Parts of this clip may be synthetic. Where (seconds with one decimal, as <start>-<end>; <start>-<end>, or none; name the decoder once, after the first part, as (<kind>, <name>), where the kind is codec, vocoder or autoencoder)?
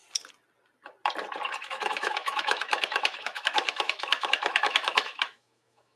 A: 1.6-6.0 (autoencoder, DAC-VAE)